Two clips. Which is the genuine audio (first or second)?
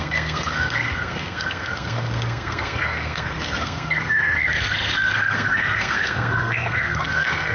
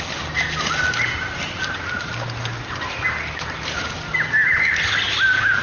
second